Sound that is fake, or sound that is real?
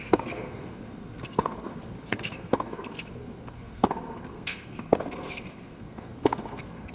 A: fake